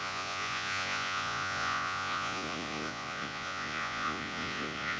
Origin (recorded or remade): remade